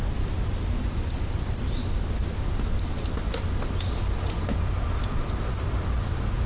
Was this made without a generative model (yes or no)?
yes